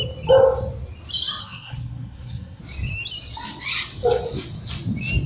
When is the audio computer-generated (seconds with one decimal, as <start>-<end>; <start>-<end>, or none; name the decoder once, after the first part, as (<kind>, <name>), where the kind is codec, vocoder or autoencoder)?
1.4-2.6 (codec, SNAC)